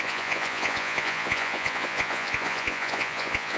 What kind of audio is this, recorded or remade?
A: remade